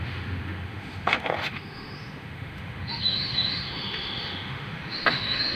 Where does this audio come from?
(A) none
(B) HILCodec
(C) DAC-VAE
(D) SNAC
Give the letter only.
C